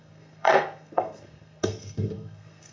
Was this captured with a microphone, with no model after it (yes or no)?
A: no